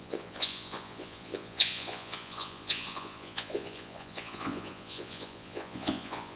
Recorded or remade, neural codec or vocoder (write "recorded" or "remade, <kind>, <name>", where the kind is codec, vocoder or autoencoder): remade, vocoder, Vocos